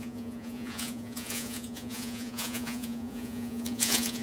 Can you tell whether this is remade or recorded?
remade